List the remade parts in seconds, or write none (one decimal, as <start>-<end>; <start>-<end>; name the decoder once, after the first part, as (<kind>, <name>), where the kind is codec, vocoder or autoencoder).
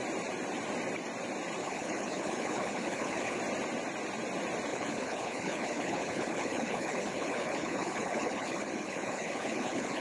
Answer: 1.6-3.4 (codec, HILCodec); 4.7-10.0